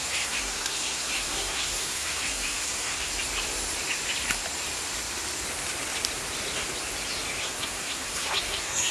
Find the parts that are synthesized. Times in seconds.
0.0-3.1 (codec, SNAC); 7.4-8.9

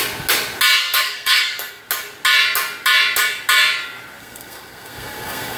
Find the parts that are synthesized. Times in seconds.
0.8-1.8 (codec, SNAC); 4.2-5.6

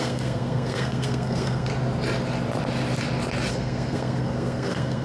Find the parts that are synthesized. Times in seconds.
0.0-1.7 (codec, SNAC); 3.5-5.0

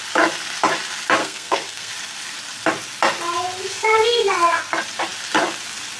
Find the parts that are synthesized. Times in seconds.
1.2-1.9 (codec, SNAC); 3.7-4.6

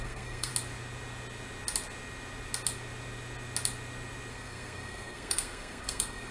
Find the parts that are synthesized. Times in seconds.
0.0-0.5 (codec, SNAC); 4.3-6.3

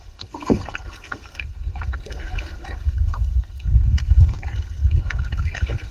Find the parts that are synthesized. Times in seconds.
0.0-5.9 (codec, SNAC)

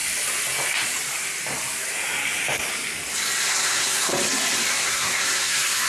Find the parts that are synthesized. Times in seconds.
3.5-4.1 (codec, SNAC); 4.7-5.9

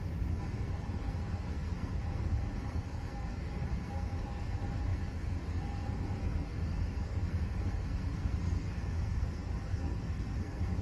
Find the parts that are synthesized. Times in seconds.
0.0-10.8 (codec, SNAC)